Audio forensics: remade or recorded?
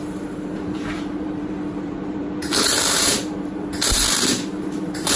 remade